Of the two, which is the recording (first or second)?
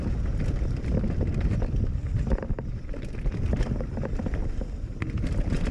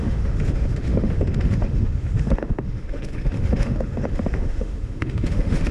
first